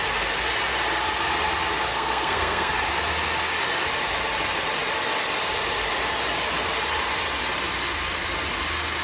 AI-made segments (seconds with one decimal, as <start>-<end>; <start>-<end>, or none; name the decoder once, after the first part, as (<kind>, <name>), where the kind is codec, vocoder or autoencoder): 1.9-2.7 (codec, SNAC)